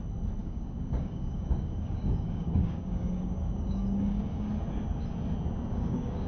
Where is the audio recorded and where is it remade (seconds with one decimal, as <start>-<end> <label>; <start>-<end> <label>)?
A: 0.0-0.4 recorded; 0.4-4.2 remade; 4.2-5.7 recorded; 5.7-6.3 remade